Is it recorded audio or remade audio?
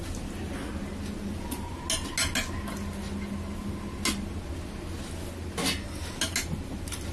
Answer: recorded